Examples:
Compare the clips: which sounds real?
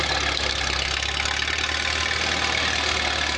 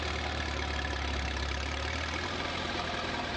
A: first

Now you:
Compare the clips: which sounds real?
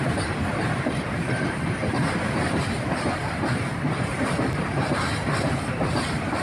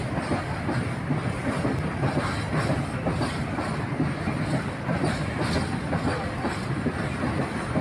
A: second